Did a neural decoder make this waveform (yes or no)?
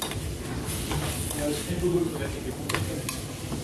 no